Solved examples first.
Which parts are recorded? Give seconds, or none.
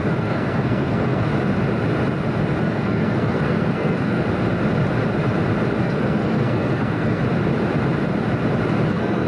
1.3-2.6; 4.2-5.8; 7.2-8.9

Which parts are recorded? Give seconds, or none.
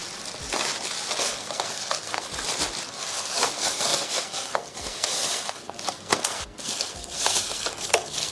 0.0-1.2; 2.3-2.9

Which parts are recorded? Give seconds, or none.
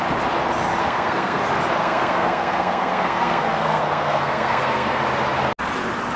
0.0-0.8; 1.4-1.8; 5.0-6.2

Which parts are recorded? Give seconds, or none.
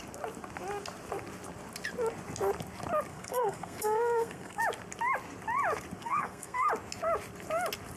0.0-3.1; 4.6-6.0; 6.7-8.0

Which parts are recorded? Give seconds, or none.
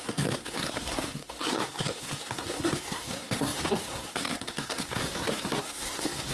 none